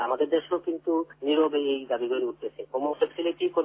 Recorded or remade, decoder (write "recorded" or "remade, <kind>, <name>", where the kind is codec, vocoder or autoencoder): recorded